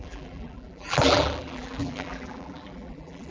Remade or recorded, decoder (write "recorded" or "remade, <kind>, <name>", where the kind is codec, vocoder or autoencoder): remade, vocoder, BigVGAN v2